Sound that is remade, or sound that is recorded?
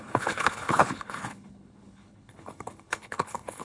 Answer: remade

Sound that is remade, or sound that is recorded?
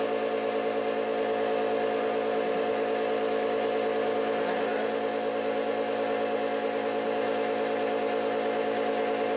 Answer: recorded